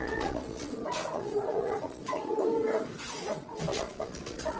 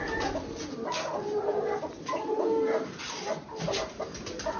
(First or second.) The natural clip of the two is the second